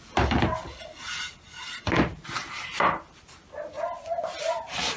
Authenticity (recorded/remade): recorded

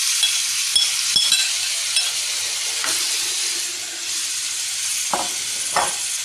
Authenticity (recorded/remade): recorded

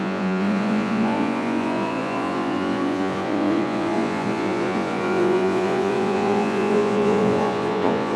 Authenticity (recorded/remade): remade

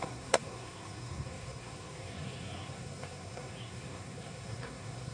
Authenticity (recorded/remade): remade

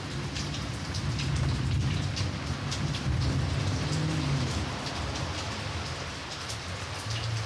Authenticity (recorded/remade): remade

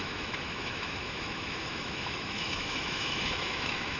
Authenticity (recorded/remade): remade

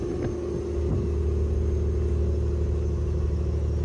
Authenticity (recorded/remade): recorded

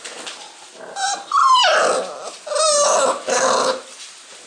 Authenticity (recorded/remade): recorded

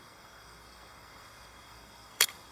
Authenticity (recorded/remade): remade